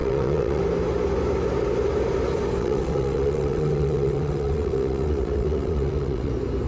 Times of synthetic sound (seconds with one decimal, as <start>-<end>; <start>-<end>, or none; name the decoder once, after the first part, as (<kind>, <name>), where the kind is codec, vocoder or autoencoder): 0.0-0.6 (vocoder, WaveNeXt); 2.6-6.3